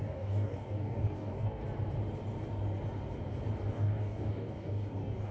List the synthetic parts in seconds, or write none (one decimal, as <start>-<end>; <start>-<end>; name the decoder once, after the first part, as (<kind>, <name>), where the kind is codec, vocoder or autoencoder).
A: 0.0-1.6 (codec, DAC); 3.7-5.3